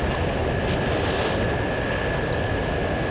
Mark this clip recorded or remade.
recorded